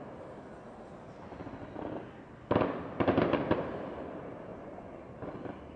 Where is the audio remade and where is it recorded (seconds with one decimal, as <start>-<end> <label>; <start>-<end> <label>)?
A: 0.0-4.5 recorded; 4.5-5.0 remade; 5.0-5.8 recorded